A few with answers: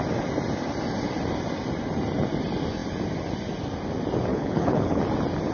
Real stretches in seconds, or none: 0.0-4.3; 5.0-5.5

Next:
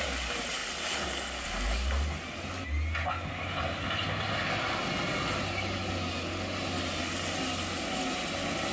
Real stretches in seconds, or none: 0.0-8.7

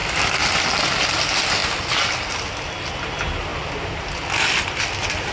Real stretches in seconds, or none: 0.0-5.3

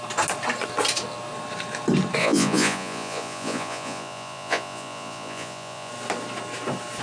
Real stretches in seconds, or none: 0.0-2.2; 5.9-7.0

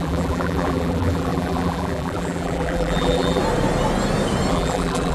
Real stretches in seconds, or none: 3.4-4.5